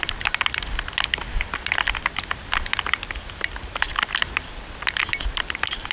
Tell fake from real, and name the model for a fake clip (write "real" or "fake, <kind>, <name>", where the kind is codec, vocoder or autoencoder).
real